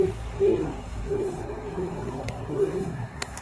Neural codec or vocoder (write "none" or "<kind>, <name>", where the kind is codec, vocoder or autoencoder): codec, SNAC